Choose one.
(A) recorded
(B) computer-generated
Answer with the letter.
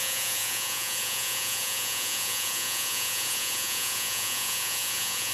B